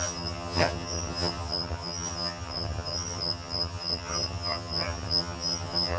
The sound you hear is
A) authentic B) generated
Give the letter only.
B